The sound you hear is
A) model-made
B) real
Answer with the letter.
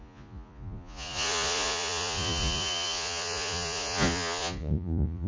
A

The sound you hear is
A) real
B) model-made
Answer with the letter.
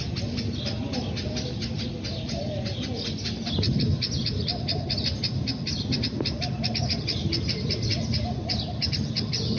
A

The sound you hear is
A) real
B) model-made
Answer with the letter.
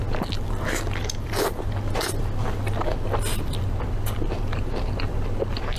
B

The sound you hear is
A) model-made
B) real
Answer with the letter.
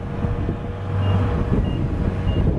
B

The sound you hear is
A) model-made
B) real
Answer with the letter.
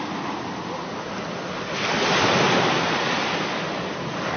B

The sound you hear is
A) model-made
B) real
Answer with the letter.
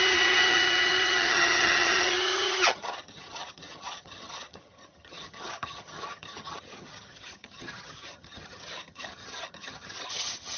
A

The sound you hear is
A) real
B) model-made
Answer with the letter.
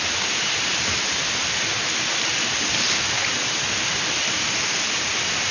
A